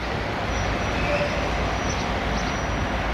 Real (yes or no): yes